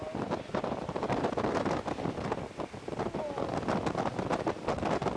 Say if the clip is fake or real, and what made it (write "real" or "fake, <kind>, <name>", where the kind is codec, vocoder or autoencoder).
real